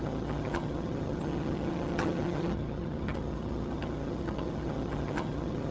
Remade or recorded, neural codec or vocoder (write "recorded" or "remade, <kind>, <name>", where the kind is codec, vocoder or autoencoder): remade, vocoder, HiFi-GAN